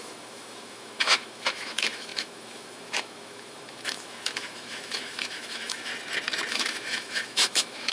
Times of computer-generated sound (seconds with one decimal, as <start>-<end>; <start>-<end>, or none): 0.0-5.9; 6.5-7.9